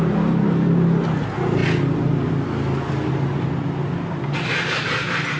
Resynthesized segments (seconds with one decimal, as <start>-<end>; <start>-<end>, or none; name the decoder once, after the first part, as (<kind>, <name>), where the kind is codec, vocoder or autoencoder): none